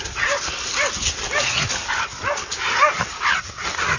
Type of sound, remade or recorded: recorded